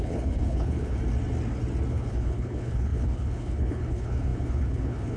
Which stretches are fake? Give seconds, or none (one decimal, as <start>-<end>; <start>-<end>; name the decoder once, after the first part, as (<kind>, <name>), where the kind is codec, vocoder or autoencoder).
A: 0.0-1.0 (codec, HILCodec); 1.9-5.2